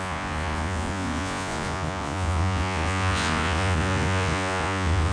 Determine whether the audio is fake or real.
fake